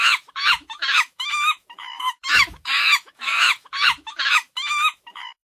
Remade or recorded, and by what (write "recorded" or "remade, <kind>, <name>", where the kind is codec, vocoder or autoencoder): remade, autoencoder, DAC-VAE